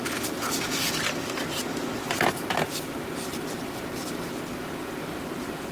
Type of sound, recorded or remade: recorded